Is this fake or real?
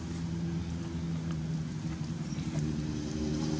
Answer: real